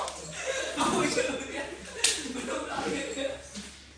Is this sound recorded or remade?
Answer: recorded